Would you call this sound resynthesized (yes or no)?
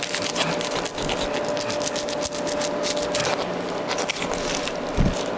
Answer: no